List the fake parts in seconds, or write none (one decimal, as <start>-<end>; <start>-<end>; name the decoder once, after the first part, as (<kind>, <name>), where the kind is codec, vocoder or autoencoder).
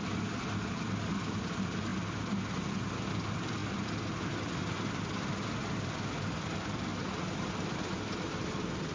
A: 0.0-1.9 (vocoder, BigVGAN v2); 3.1-6.9; 7.5-8.9